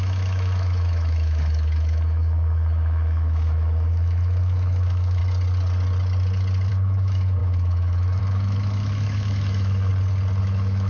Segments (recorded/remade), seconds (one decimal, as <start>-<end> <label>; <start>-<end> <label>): 0.0-5.2 remade; 5.2-6.7 recorded; 6.7-9.9 remade; 9.9-10.4 recorded; 10.4-10.9 remade